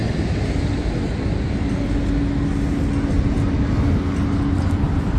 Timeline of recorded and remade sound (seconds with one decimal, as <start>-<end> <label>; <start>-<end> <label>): 0.0-5.2 recorded